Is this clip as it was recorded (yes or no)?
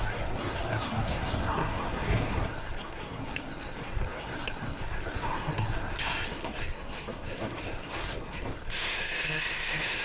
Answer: no